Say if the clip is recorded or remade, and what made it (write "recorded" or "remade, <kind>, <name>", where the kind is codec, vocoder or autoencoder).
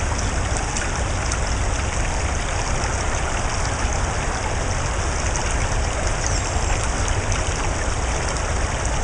recorded